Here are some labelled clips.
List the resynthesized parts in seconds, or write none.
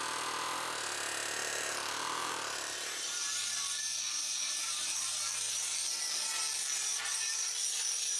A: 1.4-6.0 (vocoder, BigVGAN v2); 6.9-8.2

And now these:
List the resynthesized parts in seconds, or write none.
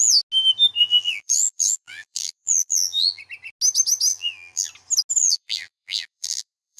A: 0.8-3.2 (vocoder, BigVGAN v2); 4.1-4.7; 5.2-6.8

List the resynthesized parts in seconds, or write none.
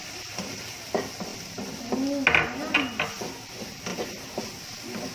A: 0.0-0.8 (vocoder, BigVGAN v2); 3.9-4.4